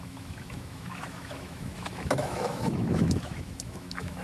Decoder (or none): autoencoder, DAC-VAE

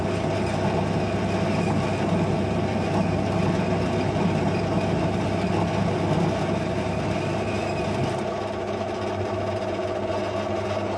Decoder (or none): none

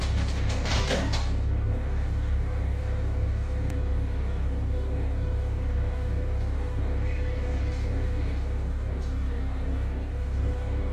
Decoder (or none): codec, DAC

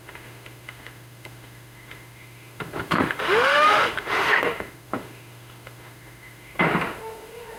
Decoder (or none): autoencoder, DAC-VAE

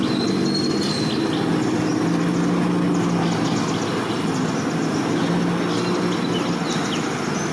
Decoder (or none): none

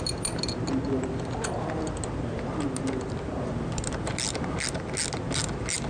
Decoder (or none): none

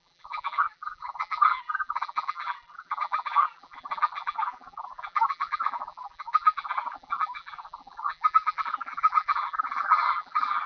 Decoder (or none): vocoder, BigVGAN v2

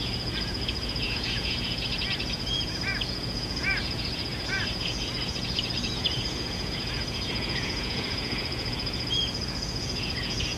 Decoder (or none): vocoder, Vocos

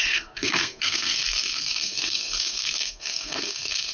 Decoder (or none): codec, SNAC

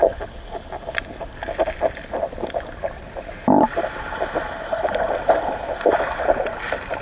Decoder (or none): none